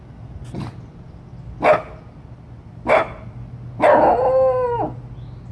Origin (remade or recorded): recorded